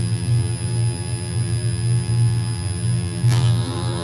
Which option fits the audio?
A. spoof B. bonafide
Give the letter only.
A